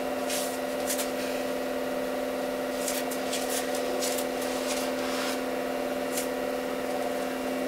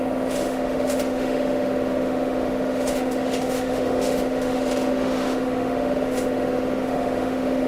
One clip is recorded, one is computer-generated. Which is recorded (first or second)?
first